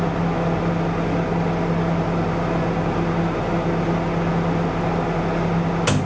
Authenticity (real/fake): real